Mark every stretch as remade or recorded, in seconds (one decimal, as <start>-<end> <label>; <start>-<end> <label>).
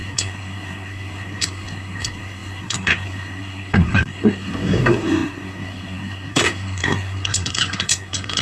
0.0-8.4 remade